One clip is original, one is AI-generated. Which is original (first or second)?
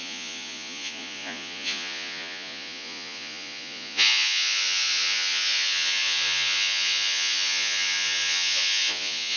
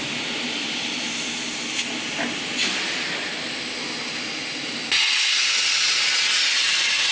second